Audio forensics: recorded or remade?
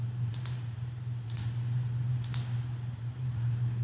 remade